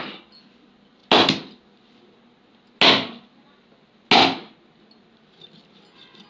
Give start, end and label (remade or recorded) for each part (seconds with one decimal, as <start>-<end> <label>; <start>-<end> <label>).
0.0-6.3 recorded